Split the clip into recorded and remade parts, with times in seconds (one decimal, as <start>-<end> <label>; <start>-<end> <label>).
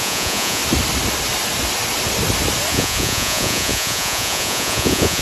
0.0-0.6 remade; 0.6-2.7 recorded; 2.7-5.2 remade